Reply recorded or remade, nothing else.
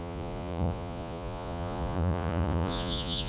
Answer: remade